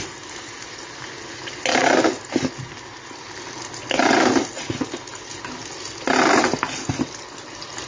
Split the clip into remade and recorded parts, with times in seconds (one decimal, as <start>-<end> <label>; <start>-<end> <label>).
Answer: 0.0-7.9 recorded